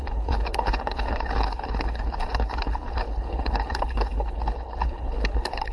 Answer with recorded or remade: remade